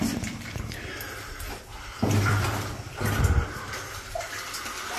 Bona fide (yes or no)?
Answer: no